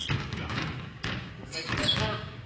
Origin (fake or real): fake